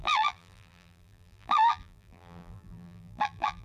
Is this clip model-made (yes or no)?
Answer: yes